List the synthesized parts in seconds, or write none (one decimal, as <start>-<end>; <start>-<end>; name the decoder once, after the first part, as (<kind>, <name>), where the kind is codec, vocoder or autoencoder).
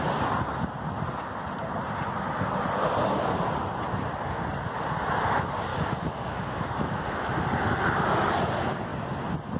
5.7-7.3 (autoencoder, DAC-VAE)